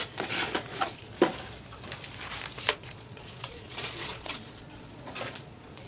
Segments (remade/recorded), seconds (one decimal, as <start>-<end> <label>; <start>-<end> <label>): 0.0-1.1 remade; 1.1-2.7 recorded; 2.7-5.9 remade